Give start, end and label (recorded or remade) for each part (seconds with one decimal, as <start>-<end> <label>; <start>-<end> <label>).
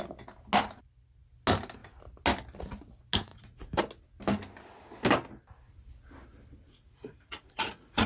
0.0-3.3 recorded; 3.3-3.8 remade; 3.8-6.7 recorded; 6.7-8.1 remade